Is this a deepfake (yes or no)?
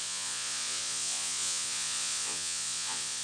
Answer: yes